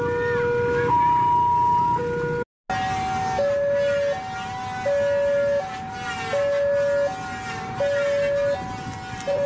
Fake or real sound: real